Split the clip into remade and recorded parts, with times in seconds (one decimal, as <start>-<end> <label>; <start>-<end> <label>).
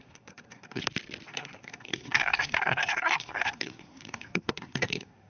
0.0-0.8 remade; 0.8-1.3 recorded; 1.3-5.3 remade